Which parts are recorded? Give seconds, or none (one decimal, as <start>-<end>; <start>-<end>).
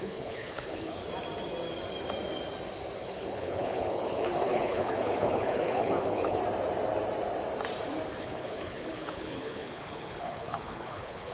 1.0-3.0; 6.4-8.2